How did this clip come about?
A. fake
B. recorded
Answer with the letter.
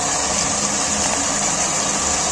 B